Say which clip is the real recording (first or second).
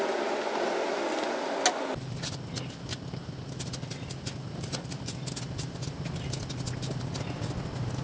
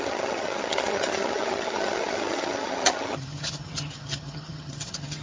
first